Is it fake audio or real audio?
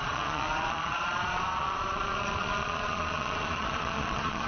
fake